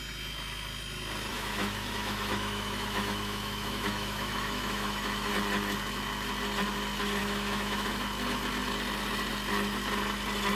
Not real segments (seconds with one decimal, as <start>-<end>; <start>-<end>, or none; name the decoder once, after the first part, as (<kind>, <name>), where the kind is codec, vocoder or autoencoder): 1.3-5.3 (autoencoder, DAC-VAE); 7.2-7.9